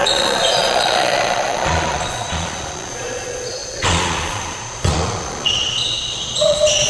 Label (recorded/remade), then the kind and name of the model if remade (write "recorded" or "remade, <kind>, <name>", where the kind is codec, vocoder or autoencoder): remade, vocoder, Vocos